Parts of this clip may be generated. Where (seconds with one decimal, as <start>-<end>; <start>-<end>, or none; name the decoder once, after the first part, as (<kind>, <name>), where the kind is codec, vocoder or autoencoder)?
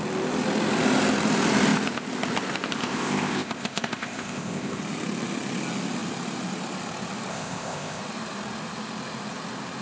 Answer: 2.8-4.8 (codec, ZipCodec); 7.3-8.0